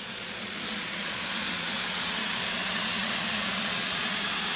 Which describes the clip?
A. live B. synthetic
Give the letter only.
B